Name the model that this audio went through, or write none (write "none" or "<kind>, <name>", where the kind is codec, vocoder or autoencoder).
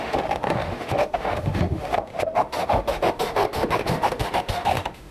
autoencoder, DAC-VAE